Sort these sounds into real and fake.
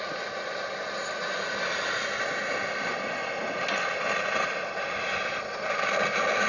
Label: real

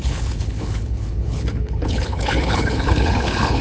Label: fake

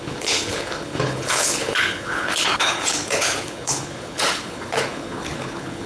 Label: fake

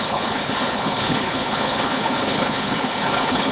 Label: fake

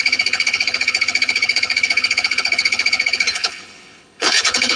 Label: fake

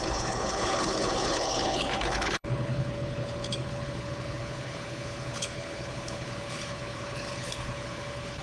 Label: fake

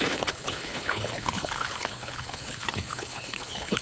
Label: fake